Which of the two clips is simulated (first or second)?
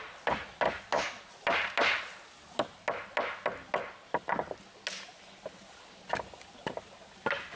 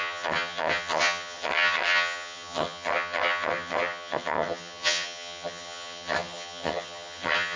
second